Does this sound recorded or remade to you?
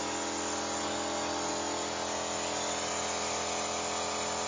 recorded